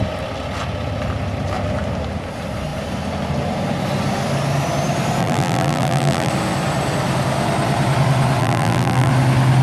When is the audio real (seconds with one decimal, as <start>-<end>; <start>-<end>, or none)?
0.0-5.2; 6.3-8.4; 9.1-9.6